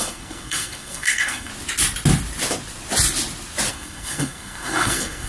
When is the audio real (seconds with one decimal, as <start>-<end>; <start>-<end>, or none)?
1.5-3.7